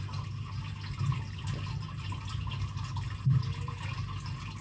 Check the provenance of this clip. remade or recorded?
recorded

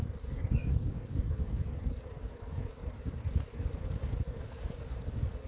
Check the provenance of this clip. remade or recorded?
remade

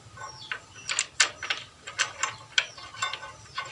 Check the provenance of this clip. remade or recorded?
recorded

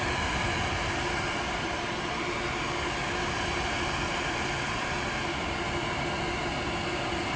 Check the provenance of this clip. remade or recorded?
recorded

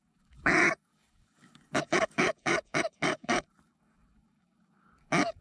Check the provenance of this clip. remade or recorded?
remade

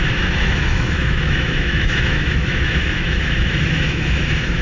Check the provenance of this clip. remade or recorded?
remade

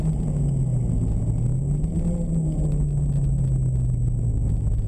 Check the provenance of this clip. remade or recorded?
recorded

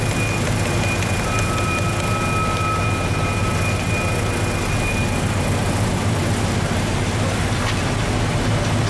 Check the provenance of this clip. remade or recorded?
recorded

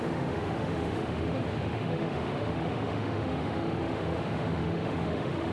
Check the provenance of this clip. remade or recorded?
remade